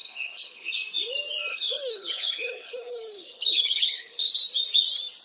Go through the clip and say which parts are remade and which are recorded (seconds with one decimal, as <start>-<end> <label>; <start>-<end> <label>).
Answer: 0.0-0.7 remade; 0.7-1.5 recorded; 1.5-4.3 remade; 4.3-5.2 recorded